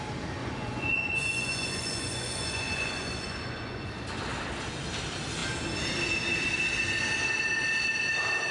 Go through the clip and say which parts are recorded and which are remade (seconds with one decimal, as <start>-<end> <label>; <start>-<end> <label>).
0.0-0.4 recorded; 0.4-3.9 remade; 3.9-8.5 recorded